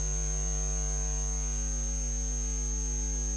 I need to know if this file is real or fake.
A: real